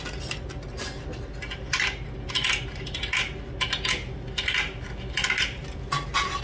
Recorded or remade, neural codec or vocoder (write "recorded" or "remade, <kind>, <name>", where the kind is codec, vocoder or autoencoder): recorded